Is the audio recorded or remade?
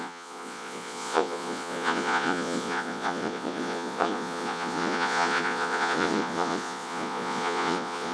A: remade